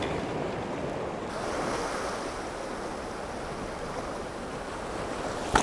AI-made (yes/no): no